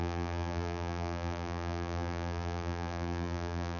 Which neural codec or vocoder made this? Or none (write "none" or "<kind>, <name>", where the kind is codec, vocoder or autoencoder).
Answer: vocoder, BigVGAN v2